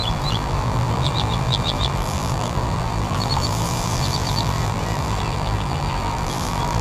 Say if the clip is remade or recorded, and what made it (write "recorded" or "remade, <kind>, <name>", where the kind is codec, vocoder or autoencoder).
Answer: remade, vocoder, BigVGAN v2